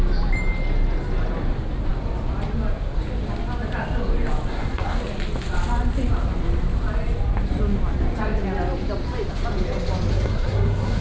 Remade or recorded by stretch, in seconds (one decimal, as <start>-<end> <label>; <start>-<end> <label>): 0.0-4.5 recorded; 4.5-5.0 remade; 5.0-10.1 recorded; 10.1-11.0 remade